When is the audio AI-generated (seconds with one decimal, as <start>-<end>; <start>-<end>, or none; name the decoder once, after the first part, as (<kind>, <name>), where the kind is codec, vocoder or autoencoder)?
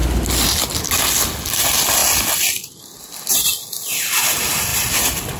none